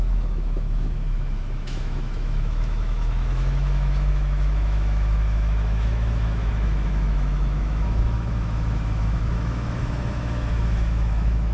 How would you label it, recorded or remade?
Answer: remade